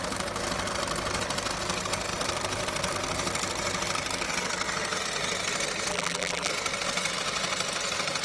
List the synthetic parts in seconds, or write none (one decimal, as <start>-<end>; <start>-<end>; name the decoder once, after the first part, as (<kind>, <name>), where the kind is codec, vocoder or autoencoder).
5.9-6.5 (vocoder, BigVGAN v2)